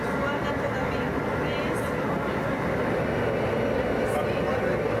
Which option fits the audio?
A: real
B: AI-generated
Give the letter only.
A